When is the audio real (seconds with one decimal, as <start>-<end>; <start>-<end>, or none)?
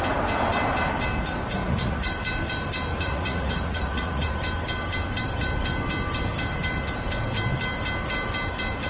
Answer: 0.0-1.6; 2.1-2.9; 4.3-8.9